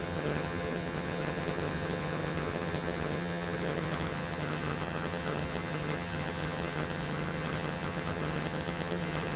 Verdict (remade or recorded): remade